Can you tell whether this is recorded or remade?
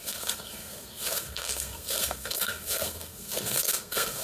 remade